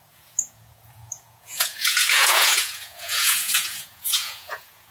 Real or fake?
fake